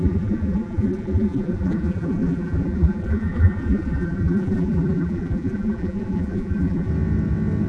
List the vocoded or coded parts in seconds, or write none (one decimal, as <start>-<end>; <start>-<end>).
0.0-6.9